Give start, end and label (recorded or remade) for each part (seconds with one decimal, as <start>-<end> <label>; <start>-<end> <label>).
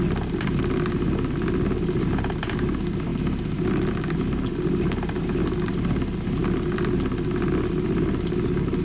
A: 0.0-8.8 recorded